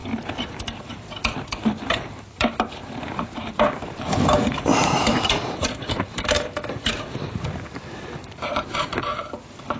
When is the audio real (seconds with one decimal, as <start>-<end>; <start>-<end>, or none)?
0.0-0.8